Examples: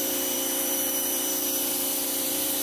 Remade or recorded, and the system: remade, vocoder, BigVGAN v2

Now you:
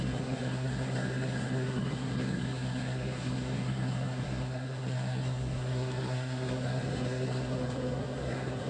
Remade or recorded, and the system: remade, codec, SNAC